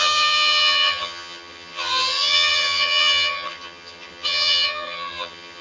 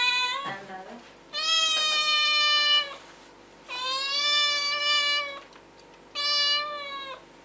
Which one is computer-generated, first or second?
first